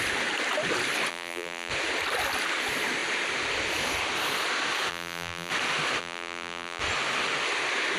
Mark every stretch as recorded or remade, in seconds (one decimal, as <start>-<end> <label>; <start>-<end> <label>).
0.0-1.1 recorded; 1.1-1.7 remade; 1.7-4.9 recorded; 4.9-5.5 remade; 5.5-6.0 recorded; 6.0-6.8 remade; 6.8-8.0 recorded

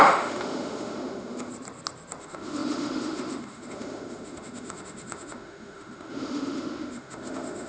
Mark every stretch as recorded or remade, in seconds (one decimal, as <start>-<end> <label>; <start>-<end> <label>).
0.0-1.5 remade; 1.5-2.2 recorded; 2.2-7.7 remade

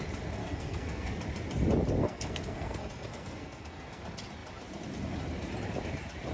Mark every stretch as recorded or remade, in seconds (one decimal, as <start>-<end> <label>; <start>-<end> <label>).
0.0-0.4 recorded; 0.4-1.1 remade; 1.1-2.0 recorded; 2.0-4.0 remade; 4.0-6.3 recorded

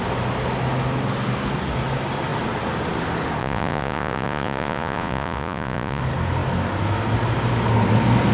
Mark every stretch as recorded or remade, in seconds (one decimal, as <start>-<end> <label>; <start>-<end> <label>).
0.0-3.4 recorded; 3.4-6.0 remade; 6.0-8.3 recorded

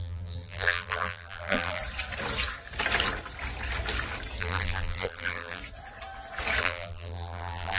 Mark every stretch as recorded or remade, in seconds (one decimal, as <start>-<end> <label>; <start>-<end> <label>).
0.0-1.8 remade; 1.8-4.4 recorded; 4.4-5.6 remade; 5.6-6.6 recorded; 6.6-7.8 remade